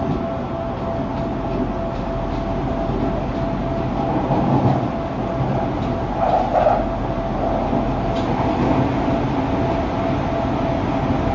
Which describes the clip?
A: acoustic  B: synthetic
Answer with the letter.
A